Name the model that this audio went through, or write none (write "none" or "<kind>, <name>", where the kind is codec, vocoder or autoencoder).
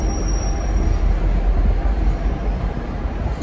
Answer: vocoder, BigVGAN v2